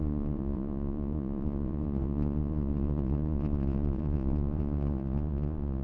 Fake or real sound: fake